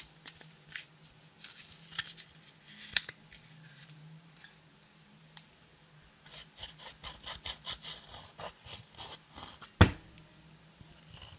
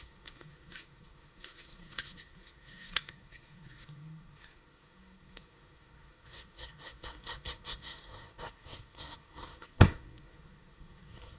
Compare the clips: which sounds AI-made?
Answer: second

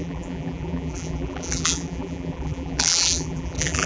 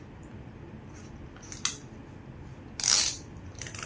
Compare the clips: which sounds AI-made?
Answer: first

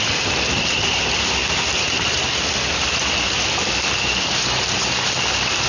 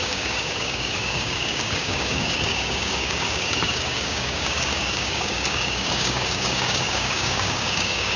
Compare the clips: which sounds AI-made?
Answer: second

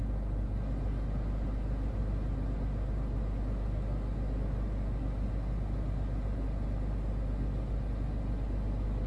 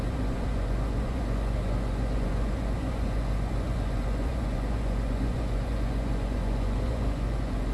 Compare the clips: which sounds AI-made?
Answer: second